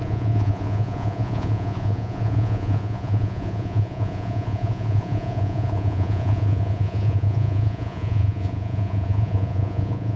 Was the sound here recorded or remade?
remade